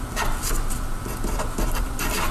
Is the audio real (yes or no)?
no